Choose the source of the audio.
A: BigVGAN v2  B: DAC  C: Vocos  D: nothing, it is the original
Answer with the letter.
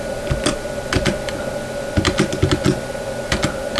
D